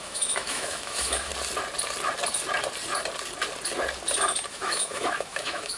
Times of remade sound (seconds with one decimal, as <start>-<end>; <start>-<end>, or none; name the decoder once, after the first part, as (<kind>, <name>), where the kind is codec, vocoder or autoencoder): 0.0-1.3 (autoencoder, DAC-VAE); 4.5-5.8